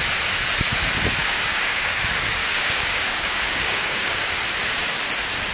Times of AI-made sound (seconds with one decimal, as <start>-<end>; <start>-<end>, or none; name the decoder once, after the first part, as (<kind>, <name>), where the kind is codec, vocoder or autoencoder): 1.2-2.0 (codec, DAC); 2.4-4.3